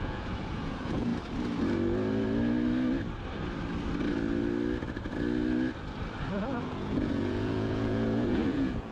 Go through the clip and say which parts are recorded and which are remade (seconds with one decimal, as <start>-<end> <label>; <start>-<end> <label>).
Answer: 0.0-1.1 remade; 1.1-6.3 recorded; 6.3-8.9 remade